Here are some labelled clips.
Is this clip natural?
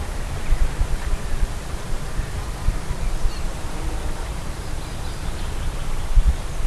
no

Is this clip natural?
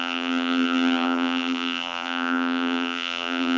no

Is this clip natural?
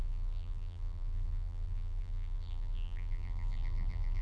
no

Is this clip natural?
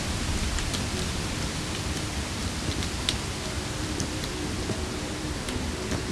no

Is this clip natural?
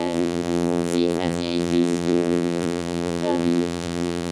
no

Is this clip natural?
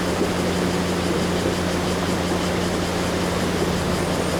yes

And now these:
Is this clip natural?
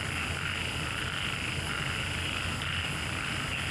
yes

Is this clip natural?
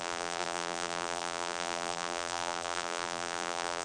no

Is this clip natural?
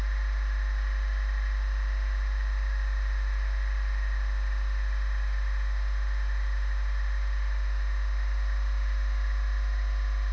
yes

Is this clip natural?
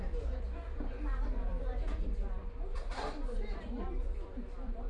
no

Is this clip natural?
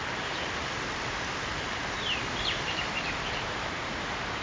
no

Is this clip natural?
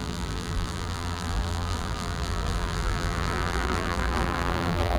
no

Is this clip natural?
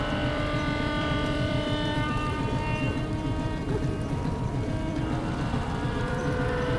no